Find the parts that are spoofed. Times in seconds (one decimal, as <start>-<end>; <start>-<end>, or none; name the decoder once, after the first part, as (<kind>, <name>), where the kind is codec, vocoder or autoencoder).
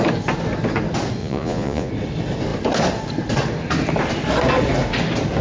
1.2-1.9 (vocoder, Vocos)